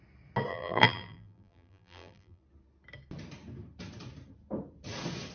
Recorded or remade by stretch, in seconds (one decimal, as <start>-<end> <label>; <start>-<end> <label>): 0.0-0.5 recorded; 0.5-2.4 remade; 2.4-5.3 recorded